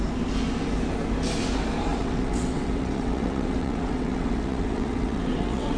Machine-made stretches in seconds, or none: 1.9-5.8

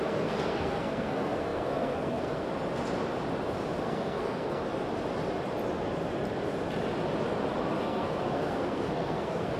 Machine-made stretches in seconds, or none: 0.0-2.5; 3.8-4.6; 7.8-9.6

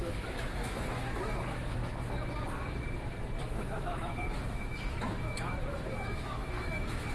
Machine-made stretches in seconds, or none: 0.0-1.8; 3.4-7.1

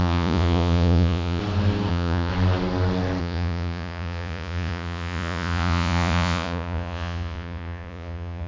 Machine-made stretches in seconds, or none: 0.0-1.4; 1.9-2.3; 3.2-8.5

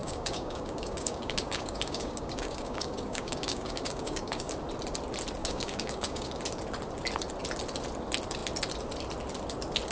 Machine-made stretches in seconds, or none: 0.0-4.5; 5.4-6.3